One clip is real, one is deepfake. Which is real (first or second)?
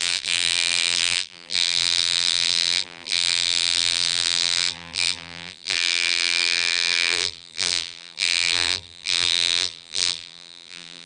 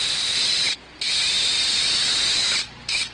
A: second